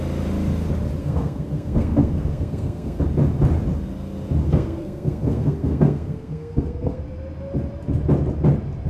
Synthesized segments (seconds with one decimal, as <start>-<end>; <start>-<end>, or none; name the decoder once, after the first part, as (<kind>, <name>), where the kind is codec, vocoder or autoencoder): 1.0-3.0 (codec, SNAC); 4.4-7.0